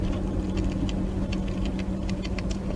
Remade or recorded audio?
recorded